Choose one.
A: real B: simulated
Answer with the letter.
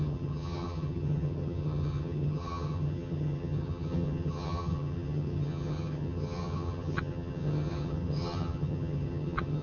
B